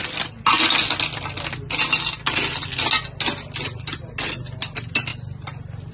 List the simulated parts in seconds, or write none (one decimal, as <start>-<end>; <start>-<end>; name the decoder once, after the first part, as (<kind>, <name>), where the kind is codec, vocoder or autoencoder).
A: none